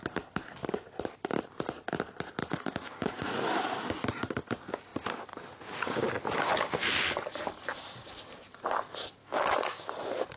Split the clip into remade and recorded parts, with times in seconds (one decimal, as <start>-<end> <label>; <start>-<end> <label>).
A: 0.0-2.4 recorded; 2.4-3.3 remade; 3.3-9.2 recorded; 9.2-9.9 remade; 9.9-10.4 recorded